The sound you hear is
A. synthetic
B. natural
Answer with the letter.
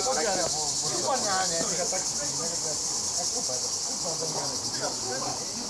B